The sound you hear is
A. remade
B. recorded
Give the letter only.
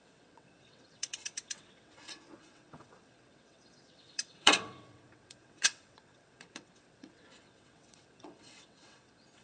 A